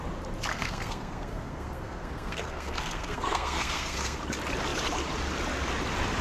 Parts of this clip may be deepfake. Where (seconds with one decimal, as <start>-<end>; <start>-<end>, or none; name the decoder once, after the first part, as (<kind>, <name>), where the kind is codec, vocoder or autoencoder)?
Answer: 0.5-4.2 (codec, SNAC)